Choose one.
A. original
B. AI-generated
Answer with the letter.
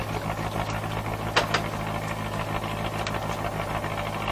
A